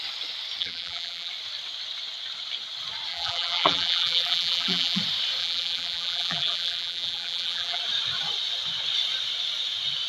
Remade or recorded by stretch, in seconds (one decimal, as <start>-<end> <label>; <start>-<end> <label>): 0.0-0.6 recorded; 0.6-1.3 remade; 1.3-3.1 recorded; 3.1-5.0 remade; 5.0-5.4 recorded; 5.4-7.8 remade; 7.8-10.1 recorded